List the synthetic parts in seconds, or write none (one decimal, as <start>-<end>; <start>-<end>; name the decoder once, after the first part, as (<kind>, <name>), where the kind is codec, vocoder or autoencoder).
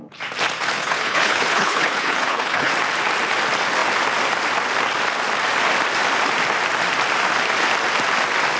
0.8-2.7 (codec, HILCodec)